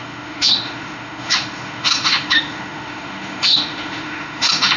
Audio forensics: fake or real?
fake